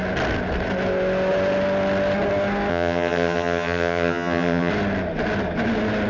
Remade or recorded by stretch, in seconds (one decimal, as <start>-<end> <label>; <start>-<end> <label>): 0.0-2.7 recorded; 2.7-4.7 remade; 4.7-6.1 recorded